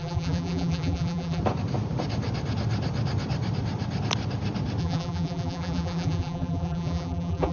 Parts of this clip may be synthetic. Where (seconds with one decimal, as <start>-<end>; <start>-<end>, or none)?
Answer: 0.0-1.4; 4.8-7.5